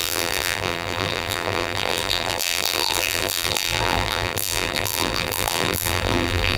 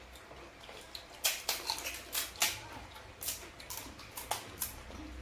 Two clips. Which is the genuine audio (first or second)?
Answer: second